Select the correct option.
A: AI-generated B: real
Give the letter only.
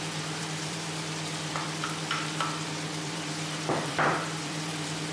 A